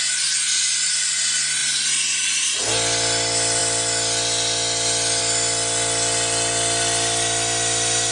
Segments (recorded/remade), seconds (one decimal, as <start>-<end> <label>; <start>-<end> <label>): 0.0-8.1 recorded